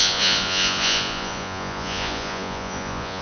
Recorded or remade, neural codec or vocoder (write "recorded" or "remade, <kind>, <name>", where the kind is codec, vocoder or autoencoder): remade, vocoder, Vocos